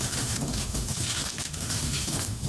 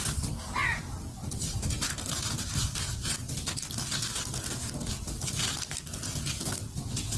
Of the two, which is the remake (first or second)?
first